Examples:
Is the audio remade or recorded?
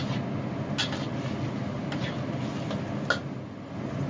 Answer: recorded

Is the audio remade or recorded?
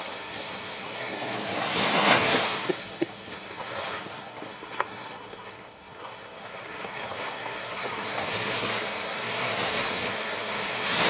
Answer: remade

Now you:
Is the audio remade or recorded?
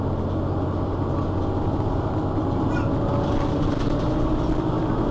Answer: recorded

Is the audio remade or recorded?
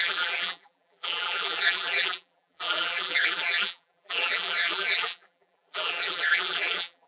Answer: remade